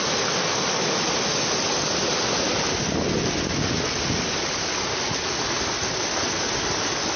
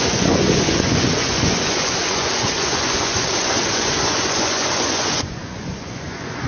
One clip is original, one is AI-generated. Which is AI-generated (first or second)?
second